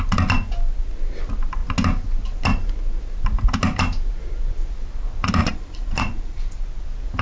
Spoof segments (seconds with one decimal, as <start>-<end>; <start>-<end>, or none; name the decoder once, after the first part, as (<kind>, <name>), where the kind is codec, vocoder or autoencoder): 5.4-6.4 (vocoder, Vocos)